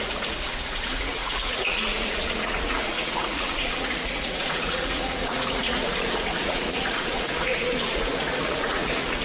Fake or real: fake